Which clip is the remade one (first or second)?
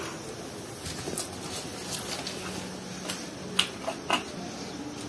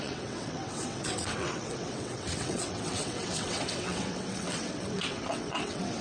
second